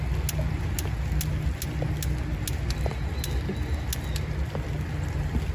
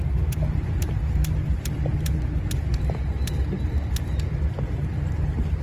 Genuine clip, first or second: first